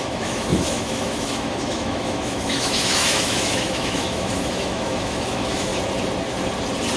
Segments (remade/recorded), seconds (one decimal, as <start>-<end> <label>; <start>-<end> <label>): 0.0-5.7 remade; 5.7-7.0 recorded